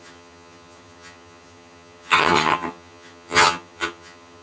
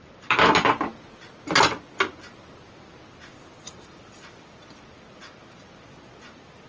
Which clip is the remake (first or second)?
first